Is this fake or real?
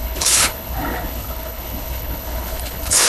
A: fake